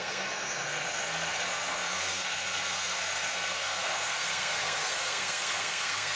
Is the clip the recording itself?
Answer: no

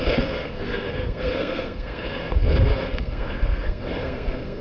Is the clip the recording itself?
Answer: no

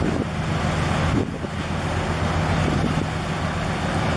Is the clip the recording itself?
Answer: yes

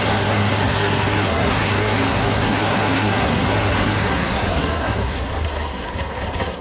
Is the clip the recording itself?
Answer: no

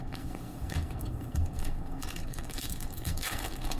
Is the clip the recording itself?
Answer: no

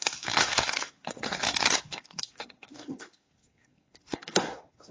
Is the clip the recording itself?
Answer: no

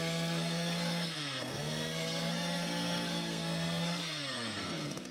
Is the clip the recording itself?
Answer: no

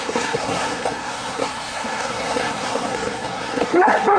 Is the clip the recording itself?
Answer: no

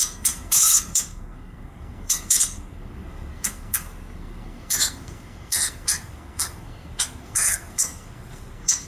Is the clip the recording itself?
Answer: no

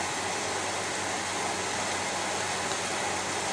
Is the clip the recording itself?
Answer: yes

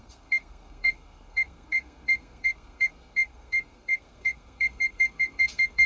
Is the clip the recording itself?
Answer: no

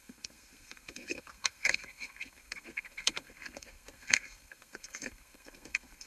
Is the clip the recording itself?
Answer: no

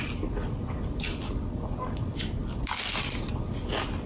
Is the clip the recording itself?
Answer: yes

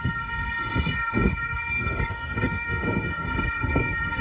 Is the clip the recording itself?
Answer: no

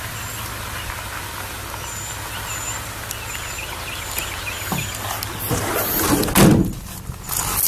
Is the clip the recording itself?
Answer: yes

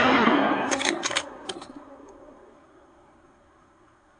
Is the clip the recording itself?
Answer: no